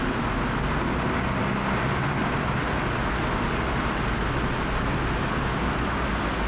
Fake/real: real